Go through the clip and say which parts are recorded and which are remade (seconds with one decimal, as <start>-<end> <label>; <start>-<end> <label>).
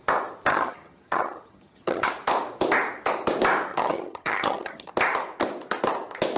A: 0.0-0.5 recorded; 0.5-2.1 remade; 2.1-3.7 recorded; 3.7-4.9 remade; 4.9-6.4 recorded